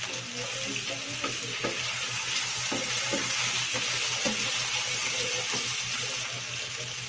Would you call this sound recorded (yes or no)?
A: yes